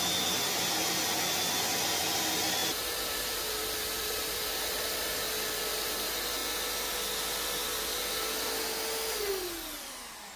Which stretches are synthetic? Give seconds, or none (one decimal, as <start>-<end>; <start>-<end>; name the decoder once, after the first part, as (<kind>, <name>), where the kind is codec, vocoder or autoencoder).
2.6-5.1 (vocoder, BigVGAN v2)